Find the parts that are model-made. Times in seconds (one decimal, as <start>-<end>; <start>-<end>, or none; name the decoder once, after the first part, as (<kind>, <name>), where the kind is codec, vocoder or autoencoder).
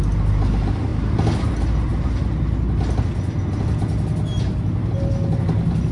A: none